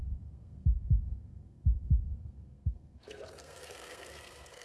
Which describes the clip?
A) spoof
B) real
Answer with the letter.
A